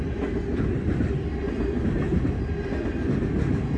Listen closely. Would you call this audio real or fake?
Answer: real